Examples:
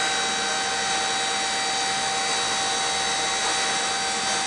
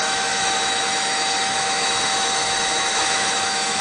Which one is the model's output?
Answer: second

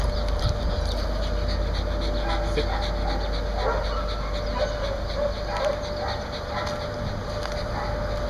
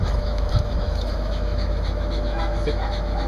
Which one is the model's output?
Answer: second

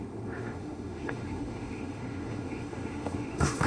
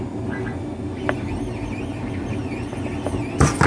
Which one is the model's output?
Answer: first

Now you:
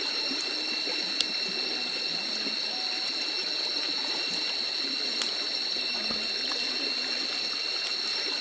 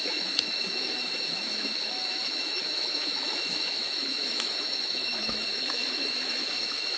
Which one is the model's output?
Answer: second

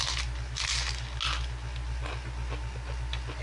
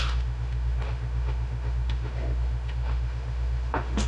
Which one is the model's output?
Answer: second